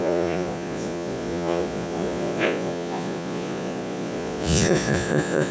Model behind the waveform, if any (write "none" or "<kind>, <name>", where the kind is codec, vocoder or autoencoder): vocoder, Vocos